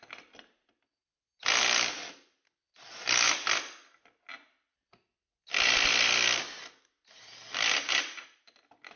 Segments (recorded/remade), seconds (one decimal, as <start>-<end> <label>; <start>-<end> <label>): 0.0-9.0 recorded